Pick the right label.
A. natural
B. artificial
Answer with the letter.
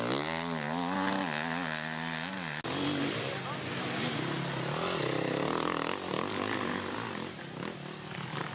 A